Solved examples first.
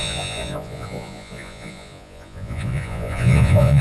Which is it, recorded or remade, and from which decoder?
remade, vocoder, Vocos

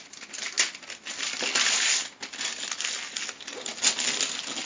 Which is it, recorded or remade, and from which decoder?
recorded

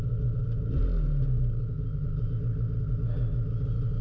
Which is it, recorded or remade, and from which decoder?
recorded